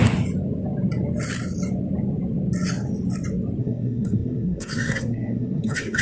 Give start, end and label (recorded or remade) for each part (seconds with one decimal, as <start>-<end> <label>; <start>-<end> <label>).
0.0-3.6 recorded; 3.6-6.0 remade